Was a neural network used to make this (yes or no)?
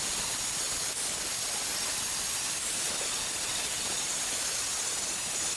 no